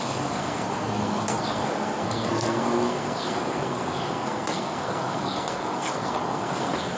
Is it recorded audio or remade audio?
remade